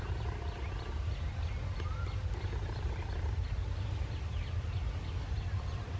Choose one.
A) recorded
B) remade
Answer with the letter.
A